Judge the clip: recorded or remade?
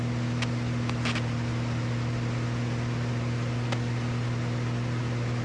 recorded